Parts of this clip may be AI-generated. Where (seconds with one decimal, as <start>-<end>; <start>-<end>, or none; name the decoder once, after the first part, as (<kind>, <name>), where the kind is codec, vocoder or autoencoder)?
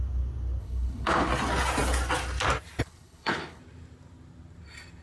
0.6-1.3 (codec, HILCodec); 2.8-3.6